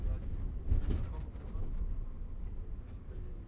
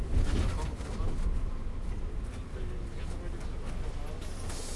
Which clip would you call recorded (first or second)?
second